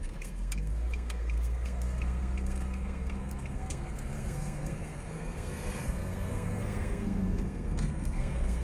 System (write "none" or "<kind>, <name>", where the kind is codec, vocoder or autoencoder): codec, SNAC